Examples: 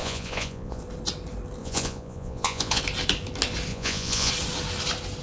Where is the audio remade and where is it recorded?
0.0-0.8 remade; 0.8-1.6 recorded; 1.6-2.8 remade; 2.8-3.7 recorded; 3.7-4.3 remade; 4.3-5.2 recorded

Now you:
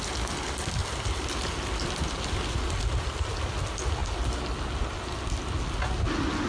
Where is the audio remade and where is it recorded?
0.0-6.5 recorded

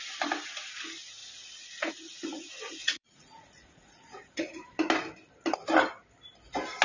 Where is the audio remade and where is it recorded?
0.0-1.2 recorded; 1.2-1.9 remade; 1.9-2.8 recorded; 2.8-4.9 remade; 4.9-6.8 recorded

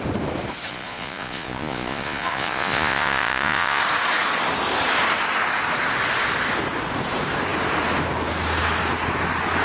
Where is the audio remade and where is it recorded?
0.0-0.7 recorded; 0.7-3.8 remade; 3.8-9.6 recorded

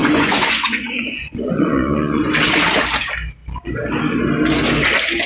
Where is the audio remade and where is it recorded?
0.0-2.3 remade; 2.3-5.3 recorded

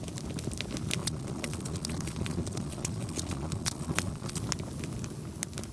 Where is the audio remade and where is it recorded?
0.0-1.0 recorded; 1.0-4.4 remade; 4.4-5.7 recorded